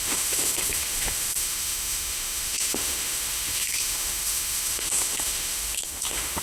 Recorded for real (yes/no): no